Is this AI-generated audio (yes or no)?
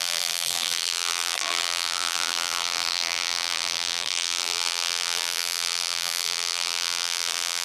yes